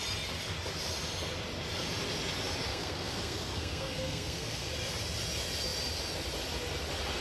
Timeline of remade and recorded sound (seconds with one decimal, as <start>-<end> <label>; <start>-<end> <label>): 0.0-2.7 recorded; 2.7-4.7 remade; 4.7-7.2 recorded